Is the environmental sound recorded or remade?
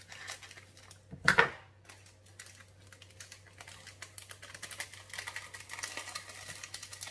recorded